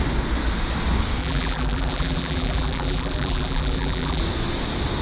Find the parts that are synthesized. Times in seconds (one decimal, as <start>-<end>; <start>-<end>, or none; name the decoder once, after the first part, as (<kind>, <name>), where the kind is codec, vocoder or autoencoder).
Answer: 1.2-4.2 (vocoder, BigVGAN v2)